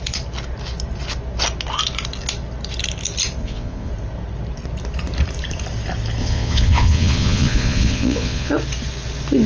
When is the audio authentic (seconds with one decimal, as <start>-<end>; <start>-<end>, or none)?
0.0-3.4; 3.9-6.2; 8.5-9.5